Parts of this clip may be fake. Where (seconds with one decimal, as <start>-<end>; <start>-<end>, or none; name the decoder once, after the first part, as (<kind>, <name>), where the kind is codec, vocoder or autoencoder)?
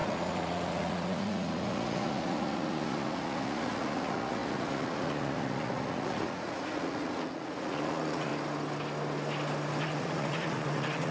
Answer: 0.0-8.3 (vocoder, Vocos); 9.8-11.1